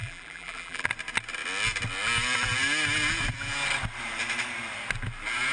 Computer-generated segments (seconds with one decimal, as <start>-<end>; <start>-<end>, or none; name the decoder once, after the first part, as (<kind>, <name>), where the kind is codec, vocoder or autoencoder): 0.0-0.9 (vocoder, BigVGAN v2)